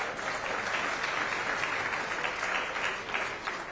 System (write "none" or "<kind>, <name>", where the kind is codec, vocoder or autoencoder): none